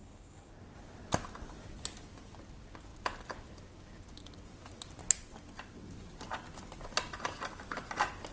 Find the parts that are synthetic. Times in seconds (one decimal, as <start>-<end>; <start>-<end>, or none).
0.0-0.5